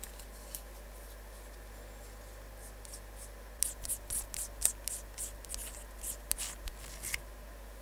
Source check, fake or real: real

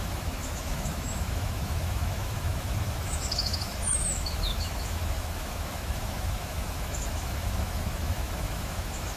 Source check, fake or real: fake